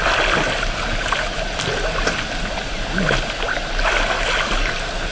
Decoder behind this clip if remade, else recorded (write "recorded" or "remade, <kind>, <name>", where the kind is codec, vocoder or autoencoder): recorded